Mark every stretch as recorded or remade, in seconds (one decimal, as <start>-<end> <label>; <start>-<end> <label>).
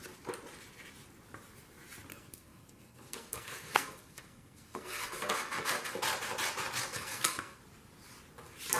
0.0-2.1 recorded; 2.1-6.0 remade; 6.0-6.9 recorded; 6.9-7.6 remade; 7.6-8.8 recorded